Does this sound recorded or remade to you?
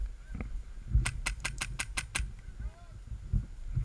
recorded